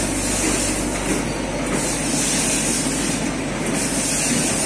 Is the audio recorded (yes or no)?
yes